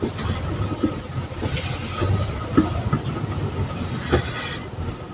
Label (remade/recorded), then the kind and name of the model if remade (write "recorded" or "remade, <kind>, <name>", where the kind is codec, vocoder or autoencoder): recorded